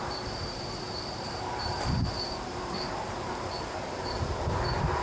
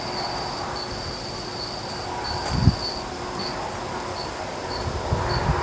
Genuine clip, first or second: second